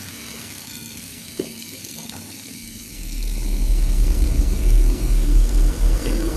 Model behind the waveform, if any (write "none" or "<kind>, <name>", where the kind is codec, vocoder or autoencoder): codec, SNAC